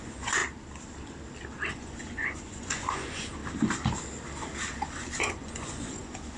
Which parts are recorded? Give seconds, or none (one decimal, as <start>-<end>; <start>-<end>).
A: 0.4-1.7; 3.4-4.9

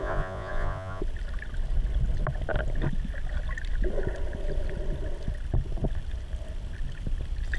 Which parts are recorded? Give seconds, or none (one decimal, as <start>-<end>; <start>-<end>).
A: 1.0-7.6